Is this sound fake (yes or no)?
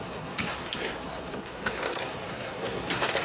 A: yes